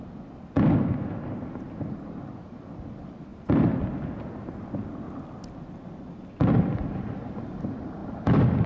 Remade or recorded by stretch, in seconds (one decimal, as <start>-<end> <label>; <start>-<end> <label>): 0.0-8.7 recorded